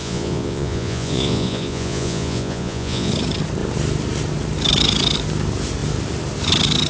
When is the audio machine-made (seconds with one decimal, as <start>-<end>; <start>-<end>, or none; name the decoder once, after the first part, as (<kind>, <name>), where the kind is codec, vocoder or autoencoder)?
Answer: 0.0-3.1 (vocoder, Vocos)